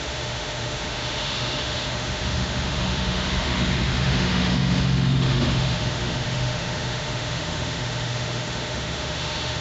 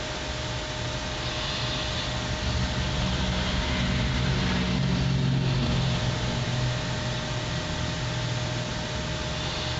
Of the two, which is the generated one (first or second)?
first